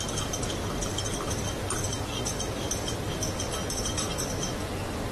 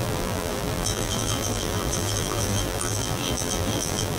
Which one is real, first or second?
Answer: first